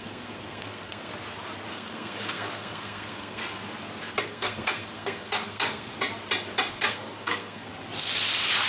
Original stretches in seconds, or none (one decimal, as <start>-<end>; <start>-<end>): 1.1-1.7; 3.4-4.2; 5.9-6.7; 7.7-8.7